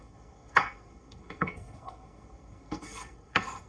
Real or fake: fake